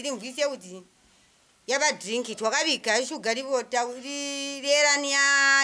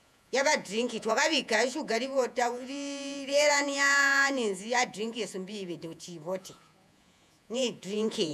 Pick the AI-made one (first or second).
second